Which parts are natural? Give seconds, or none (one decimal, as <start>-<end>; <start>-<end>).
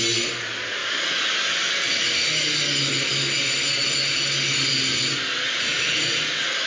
0.0-6.7